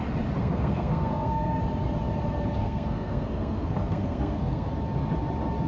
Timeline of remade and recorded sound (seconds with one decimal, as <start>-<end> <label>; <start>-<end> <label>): 0.0-0.4 recorded; 0.4-1.6 remade; 1.6-2.6 recorded; 2.6-4.7 remade; 4.7-5.7 recorded